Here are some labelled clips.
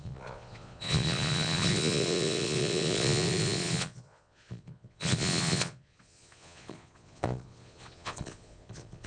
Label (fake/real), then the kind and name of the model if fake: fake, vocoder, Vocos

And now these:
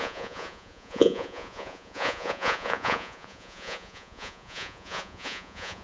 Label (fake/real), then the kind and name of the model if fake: fake, vocoder, Vocos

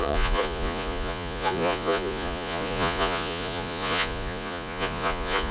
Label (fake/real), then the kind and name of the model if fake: fake, vocoder, Vocos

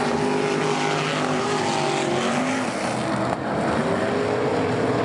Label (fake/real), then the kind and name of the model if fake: real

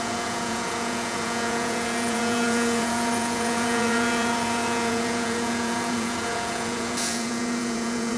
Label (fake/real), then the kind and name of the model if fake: fake, vocoder, Vocos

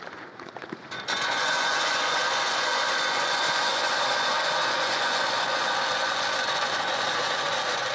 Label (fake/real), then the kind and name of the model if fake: fake, vocoder, Vocos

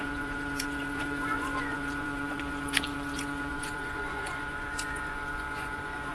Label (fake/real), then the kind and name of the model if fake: fake, vocoder, Vocos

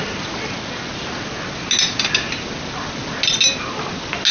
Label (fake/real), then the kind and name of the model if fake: real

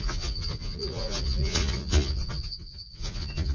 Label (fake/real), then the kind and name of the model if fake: fake, vocoder, Vocos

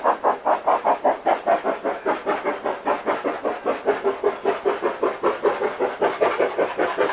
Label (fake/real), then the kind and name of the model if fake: real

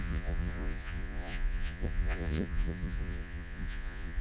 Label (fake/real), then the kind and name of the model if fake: fake, vocoder, Vocos